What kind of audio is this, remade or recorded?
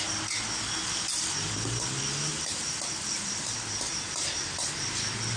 recorded